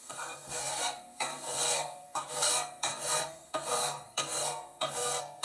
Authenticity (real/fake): fake